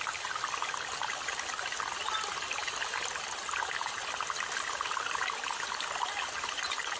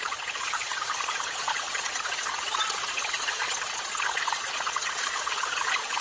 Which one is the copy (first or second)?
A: second